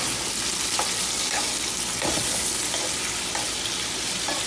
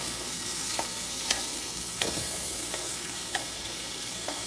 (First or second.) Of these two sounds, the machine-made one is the second